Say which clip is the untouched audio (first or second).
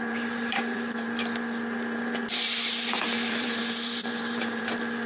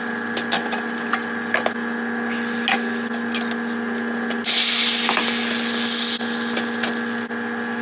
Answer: second